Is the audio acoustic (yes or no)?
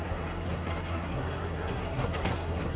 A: no